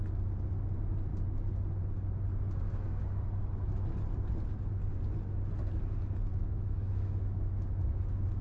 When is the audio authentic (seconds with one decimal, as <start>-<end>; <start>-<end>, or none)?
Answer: 0.0-6.3